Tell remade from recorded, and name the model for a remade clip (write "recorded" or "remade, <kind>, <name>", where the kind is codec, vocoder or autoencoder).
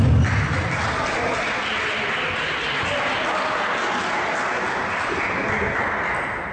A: recorded